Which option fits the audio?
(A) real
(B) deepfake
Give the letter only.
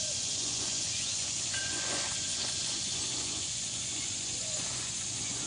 B